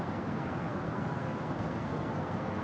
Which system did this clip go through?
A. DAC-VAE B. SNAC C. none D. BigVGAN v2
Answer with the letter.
B